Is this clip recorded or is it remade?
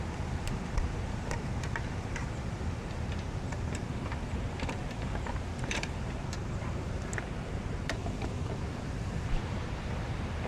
remade